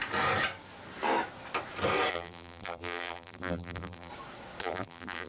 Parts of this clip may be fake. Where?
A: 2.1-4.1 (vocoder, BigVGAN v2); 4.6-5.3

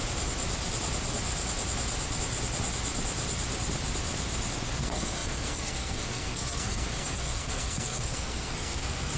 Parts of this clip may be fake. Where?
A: 4.8-9.2 (codec, SNAC)